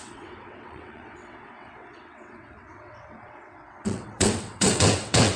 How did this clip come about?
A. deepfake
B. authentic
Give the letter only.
A